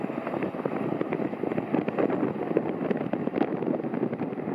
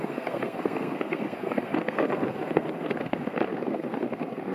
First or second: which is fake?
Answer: second